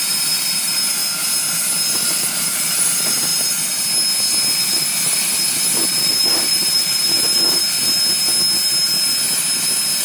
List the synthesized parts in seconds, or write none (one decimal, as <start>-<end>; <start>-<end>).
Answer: 0.0-1.0; 1.9-3.3; 4.6-7.6

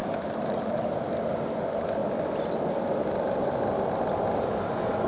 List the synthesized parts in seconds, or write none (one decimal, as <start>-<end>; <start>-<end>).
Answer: 0.0-1.1